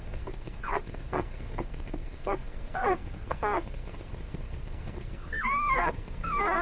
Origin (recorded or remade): remade